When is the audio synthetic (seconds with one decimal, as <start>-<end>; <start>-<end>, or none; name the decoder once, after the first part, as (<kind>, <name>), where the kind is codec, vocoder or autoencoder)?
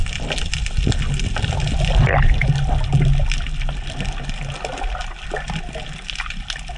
none